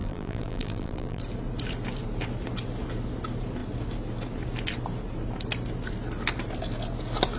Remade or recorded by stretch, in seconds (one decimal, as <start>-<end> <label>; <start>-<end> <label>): 0.0-1.2 remade; 1.2-7.4 recorded

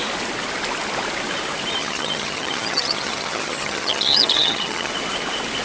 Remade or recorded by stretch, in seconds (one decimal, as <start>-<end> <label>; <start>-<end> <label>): 0.0-1.8 recorded; 1.8-4.9 remade; 4.9-5.6 recorded

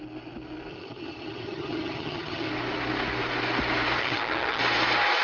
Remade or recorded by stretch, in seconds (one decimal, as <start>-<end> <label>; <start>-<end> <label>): 0.0-0.7 recorded; 0.7-2.5 remade; 2.5-4.0 recorded; 4.0-4.6 remade; 4.6-5.2 recorded

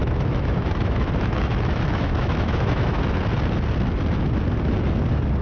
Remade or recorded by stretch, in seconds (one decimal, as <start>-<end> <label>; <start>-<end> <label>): 0.0-3.2 remade; 3.2-5.4 recorded